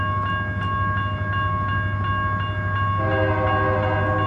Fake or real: real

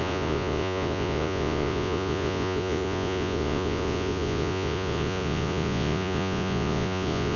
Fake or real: fake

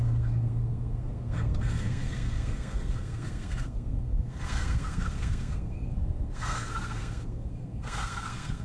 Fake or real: fake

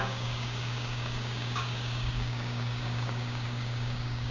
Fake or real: fake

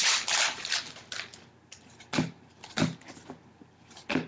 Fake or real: real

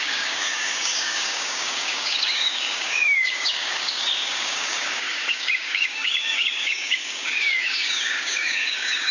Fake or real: fake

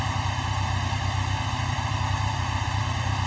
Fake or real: fake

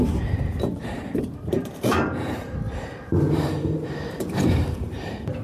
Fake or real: fake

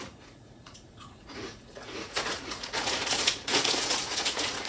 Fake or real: fake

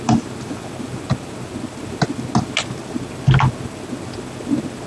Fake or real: real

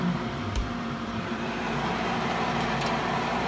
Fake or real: fake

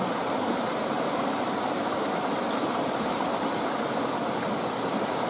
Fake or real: real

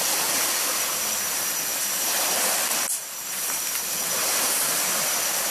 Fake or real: real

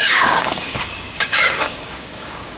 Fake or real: fake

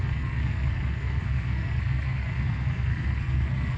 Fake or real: fake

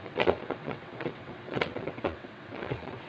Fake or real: fake